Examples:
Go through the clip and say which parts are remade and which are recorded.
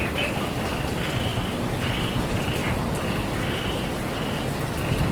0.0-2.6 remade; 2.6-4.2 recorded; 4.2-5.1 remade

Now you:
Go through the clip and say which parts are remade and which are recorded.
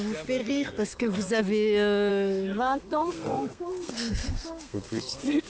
0.0-0.4 recorded; 0.4-1.4 remade; 1.4-2.1 recorded; 2.1-5.5 remade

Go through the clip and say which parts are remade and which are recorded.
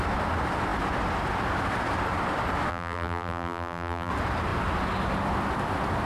0.0-2.7 recorded; 2.7-4.1 remade; 4.1-6.1 recorded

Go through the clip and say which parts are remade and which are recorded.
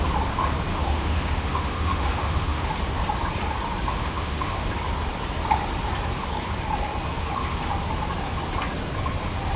0.0-0.7 recorded; 0.7-2.7 remade; 2.7-4.0 recorded; 4.0-4.6 remade; 4.6-9.6 recorded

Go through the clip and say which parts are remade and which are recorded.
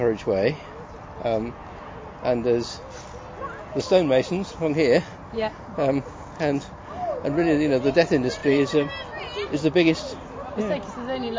0.0-5.1 recorded; 5.1-6.3 remade; 6.3-8.4 recorded; 8.4-10.6 remade; 10.6-11.4 recorded